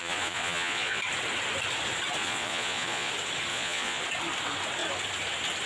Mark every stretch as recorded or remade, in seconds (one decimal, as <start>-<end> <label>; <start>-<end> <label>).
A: 0.0-1.0 remade; 1.0-2.2 recorded; 2.2-3.1 remade; 3.1-3.5 recorded; 3.5-4.0 remade; 4.0-5.7 recorded

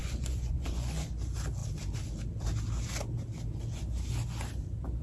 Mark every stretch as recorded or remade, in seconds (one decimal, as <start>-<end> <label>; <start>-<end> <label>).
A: 0.0-1.1 remade; 1.1-5.0 recorded

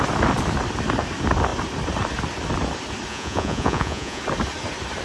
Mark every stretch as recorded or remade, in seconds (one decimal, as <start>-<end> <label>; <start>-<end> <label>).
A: 0.0-3.1 recorded; 3.1-4.2 remade; 4.2-5.0 recorded